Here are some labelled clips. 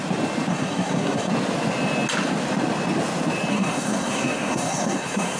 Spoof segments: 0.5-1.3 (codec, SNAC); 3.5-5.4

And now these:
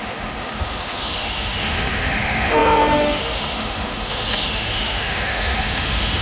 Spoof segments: 0.0-6.2 (autoencoder, DAC-VAE)

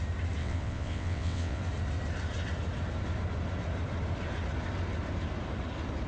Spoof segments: 0.4-1.6 (vocoder, WaveNeXt)

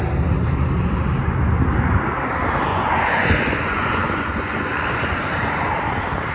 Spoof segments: 2.7-5.7 (vocoder, Vocos)

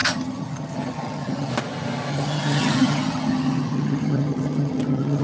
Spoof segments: 0.0-1.5 (vocoder, HiFi-GAN); 2.1-5.2